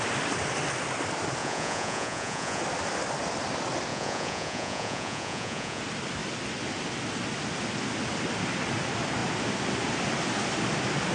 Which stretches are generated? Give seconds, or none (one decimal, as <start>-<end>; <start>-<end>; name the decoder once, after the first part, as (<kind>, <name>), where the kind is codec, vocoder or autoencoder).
1.4-2.6 (vocoder, Vocos); 3.9-5.8